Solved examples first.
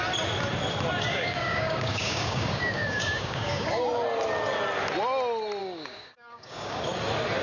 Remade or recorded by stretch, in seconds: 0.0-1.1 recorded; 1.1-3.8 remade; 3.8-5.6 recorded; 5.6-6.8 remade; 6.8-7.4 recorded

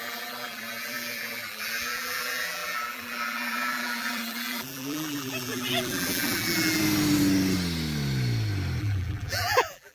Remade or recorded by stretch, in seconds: 0.0-6.8 remade; 6.8-8.8 recorded; 8.8-9.9 remade

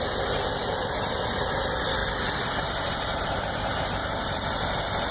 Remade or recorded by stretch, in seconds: 0.0-5.1 remade

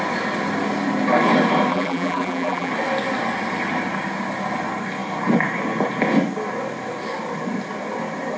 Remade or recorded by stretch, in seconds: 0.0-1.7 recorded; 1.7-2.7 remade; 2.7-8.4 recorded

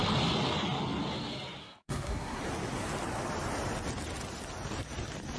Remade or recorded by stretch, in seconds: 0.0-1.6 recorded; 1.6-2.4 remade; 2.4-5.4 recorded